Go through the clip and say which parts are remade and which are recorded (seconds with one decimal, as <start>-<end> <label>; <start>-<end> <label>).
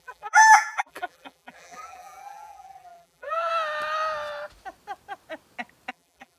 0.0-3.5 remade; 3.5-5.9 recorded; 5.9-6.4 remade